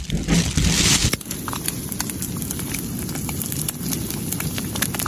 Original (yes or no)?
yes